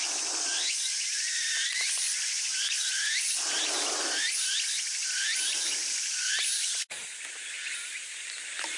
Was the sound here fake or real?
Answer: real